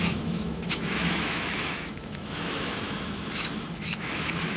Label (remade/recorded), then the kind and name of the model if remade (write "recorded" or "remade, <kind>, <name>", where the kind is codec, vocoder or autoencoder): remade, autoencoder, DAC-VAE